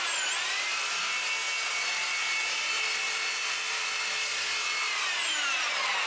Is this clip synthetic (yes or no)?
no